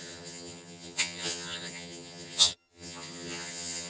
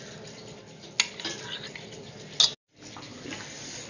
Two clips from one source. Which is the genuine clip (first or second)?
second